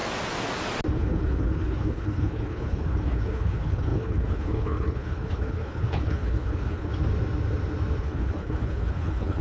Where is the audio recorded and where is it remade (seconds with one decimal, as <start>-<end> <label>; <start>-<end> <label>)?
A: 0.0-0.9 recorded; 0.9-6.9 remade; 6.9-8.0 recorded; 8.0-9.4 remade